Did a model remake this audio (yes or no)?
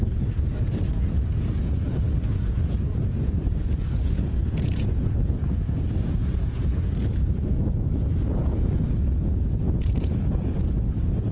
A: yes